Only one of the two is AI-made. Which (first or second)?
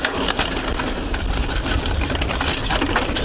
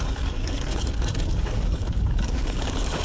second